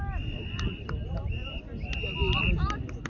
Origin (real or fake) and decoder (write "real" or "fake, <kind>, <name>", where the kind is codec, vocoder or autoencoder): real